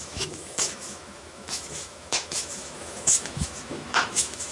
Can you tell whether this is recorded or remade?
remade